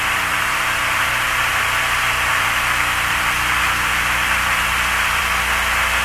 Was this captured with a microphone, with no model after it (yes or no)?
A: no